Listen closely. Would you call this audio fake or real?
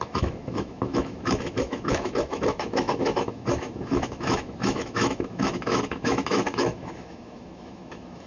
fake